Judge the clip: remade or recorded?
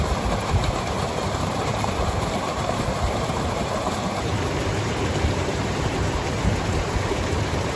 remade